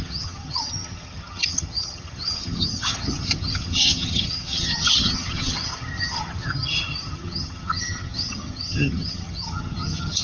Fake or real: fake